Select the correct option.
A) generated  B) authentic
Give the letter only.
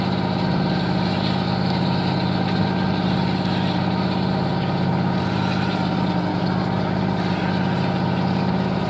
B